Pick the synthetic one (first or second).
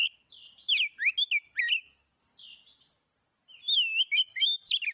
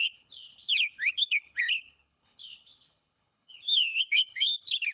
second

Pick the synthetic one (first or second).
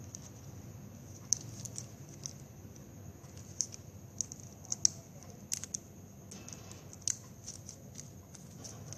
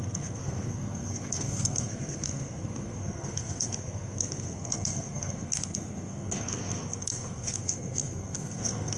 second